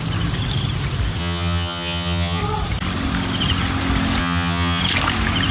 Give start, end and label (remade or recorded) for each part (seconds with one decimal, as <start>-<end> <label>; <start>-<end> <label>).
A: 0.0-1.2 recorded; 1.2-2.4 remade; 2.4-4.2 recorded; 4.2-4.8 remade; 4.8-5.5 recorded